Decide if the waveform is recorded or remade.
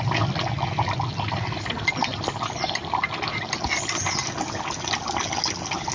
recorded